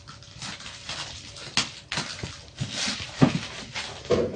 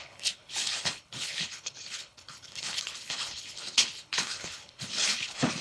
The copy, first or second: second